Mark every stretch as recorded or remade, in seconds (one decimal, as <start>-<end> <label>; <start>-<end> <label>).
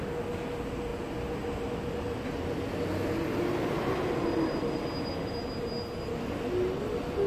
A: 0.0-7.3 recorded